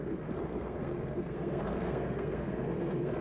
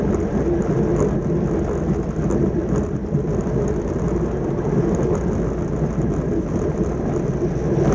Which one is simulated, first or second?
first